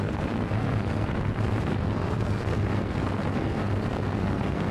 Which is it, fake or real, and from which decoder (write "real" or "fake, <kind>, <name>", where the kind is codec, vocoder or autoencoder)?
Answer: fake, codec, SNAC